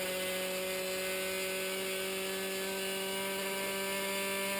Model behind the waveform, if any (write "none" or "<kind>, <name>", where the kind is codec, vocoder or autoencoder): none